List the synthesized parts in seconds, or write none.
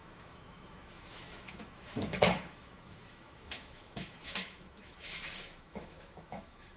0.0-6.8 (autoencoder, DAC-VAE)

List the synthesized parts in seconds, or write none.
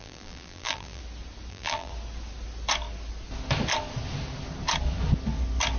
0.0-1.0 (vocoder, BigVGAN v2); 1.5-1.9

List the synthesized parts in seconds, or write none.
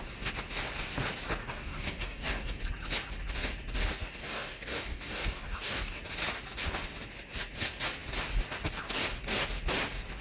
1.4-2.6 (codec, DAC); 4.2-6.0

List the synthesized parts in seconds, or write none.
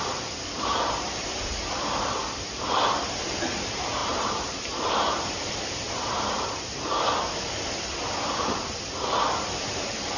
0.0-10.2 (vocoder, BigVGAN v2)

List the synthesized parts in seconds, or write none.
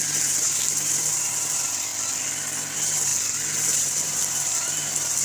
0.0-1.9 (vocoder, BigVGAN v2); 2.7-3.1; 3.6-5.2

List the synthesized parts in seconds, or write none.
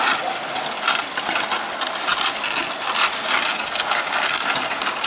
none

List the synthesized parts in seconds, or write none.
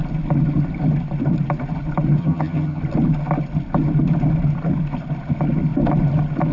2.2-2.8 (vocoder, HiFi-GAN)